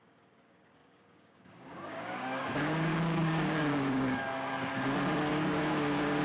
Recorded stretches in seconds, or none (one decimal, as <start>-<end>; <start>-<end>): 4.7-5.3